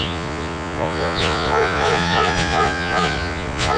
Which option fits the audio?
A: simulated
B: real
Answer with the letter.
A